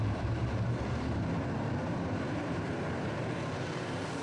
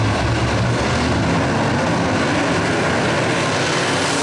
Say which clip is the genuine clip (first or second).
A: second